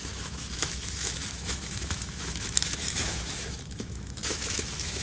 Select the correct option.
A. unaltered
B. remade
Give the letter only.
B